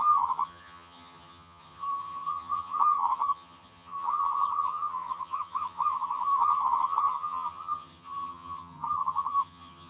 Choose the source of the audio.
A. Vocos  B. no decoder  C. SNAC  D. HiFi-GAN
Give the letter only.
D